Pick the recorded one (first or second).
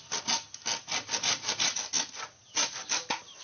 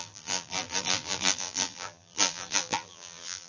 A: first